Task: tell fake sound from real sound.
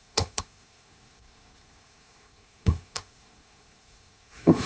fake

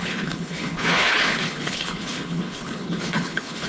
fake